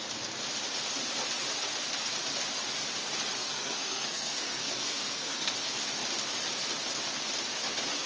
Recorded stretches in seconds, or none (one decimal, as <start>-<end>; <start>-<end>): 0.0-3.4; 5.5-8.1